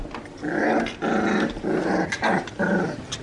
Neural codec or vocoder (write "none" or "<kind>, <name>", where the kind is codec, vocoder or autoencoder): none